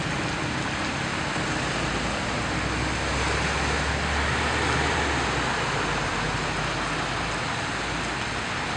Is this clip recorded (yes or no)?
yes